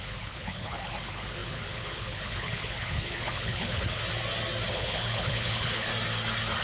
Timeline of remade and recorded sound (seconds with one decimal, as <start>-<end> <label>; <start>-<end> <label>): 0.0-4.0 remade; 4.0-4.7 recorded; 4.7-5.9 remade; 5.9-6.6 recorded